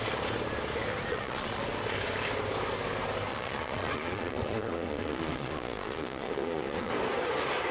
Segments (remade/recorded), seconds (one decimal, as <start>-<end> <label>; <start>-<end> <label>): 0.0-1.1 recorded; 1.1-1.6 remade; 1.6-3.3 recorded; 3.3-6.9 remade; 6.9-7.7 recorded